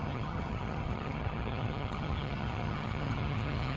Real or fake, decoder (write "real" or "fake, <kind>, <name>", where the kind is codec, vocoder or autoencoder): fake, vocoder, HiFi-GAN